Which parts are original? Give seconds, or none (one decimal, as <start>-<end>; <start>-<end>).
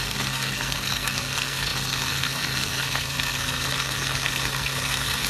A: none